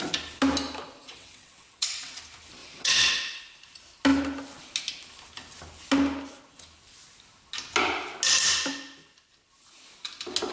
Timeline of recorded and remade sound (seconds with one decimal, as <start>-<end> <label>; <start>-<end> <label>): 0.0-1.0 recorded; 1.0-2.2 remade; 2.2-2.6 recorded; 2.6-3.4 remade; 3.4-10.5 recorded